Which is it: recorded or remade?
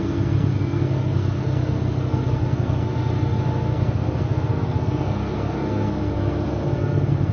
remade